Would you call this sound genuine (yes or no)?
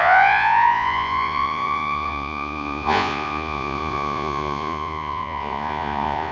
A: no